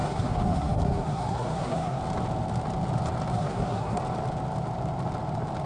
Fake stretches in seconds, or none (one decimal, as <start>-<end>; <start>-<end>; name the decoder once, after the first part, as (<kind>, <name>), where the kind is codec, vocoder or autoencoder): 0.0-2.0 (codec, SNAC); 3.3-4.0